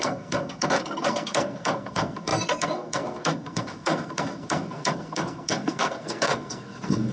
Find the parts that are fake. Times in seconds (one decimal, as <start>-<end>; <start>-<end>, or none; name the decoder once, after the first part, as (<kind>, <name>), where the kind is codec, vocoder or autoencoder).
0.0-7.1 (codec, SNAC)